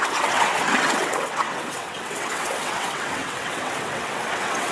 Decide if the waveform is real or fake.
fake